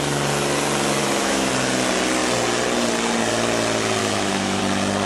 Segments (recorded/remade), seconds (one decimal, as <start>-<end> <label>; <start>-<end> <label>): 0.0-1.0 recorded; 1.0-1.5 remade; 1.5-4.0 recorded; 4.0-4.6 remade; 4.6-5.1 recorded

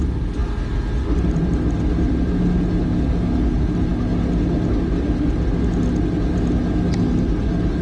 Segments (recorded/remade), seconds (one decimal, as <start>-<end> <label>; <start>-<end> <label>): 0.0-7.8 recorded